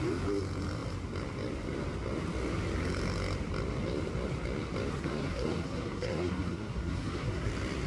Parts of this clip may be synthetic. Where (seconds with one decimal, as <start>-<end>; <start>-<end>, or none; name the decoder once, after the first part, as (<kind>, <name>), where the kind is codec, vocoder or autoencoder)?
4.9-7.5 (codec, SNAC)